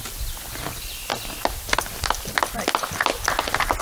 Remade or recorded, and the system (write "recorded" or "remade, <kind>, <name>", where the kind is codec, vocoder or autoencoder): recorded